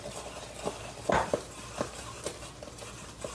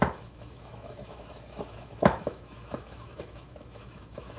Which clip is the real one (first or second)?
first